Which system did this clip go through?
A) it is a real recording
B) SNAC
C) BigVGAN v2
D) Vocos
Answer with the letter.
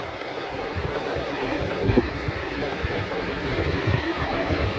B